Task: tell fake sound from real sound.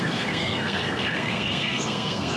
fake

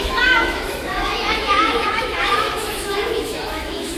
fake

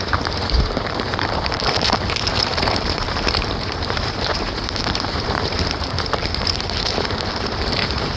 fake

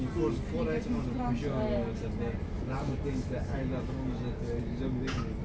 real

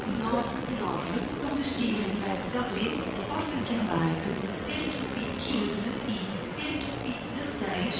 fake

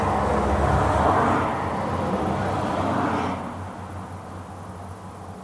real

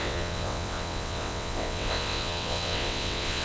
fake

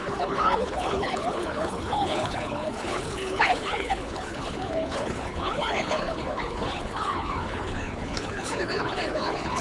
fake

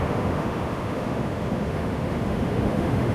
fake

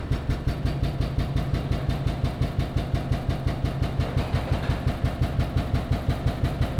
real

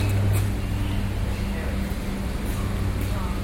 real